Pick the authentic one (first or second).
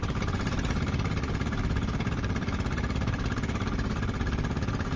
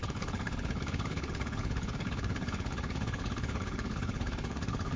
first